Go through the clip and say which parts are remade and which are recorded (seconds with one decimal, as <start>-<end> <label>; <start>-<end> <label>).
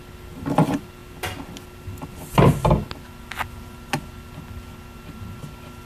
0.0-5.9 recorded